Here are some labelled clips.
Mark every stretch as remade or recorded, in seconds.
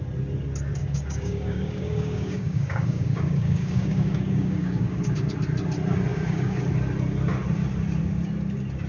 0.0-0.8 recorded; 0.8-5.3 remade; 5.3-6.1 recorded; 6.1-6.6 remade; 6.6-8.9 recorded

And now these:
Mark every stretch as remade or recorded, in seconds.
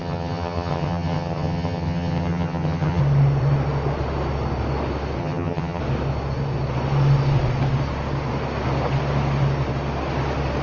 0.0-3.0 remade; 3.0-5.2 recorded; 5.2-5.8 remade; 5.8-10.6 recorded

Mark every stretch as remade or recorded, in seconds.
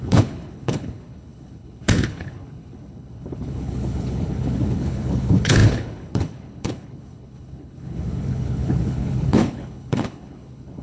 0.0-10.8 remade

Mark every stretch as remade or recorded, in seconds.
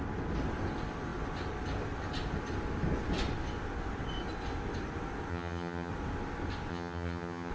0.0-5.3 recorded; 5.3-5.9 remade; 5.9-6.7 recorded; 6.7-7.5 remade